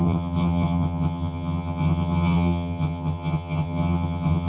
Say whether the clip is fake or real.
fake